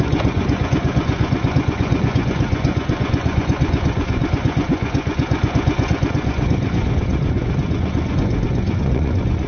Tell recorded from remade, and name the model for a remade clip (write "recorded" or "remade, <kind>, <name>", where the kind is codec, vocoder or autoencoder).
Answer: remade, vocoder, Vocos